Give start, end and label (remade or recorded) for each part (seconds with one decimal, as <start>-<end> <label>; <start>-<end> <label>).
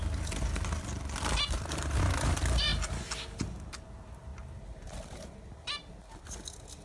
0.0-6.8 recorded